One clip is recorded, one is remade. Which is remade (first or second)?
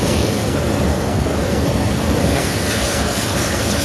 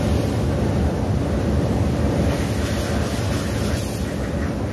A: first